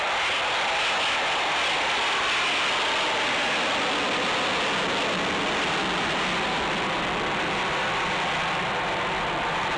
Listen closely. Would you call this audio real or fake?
real